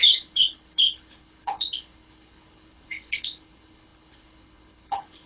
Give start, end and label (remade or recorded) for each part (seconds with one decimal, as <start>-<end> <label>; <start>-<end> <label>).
0.0-5.3 remade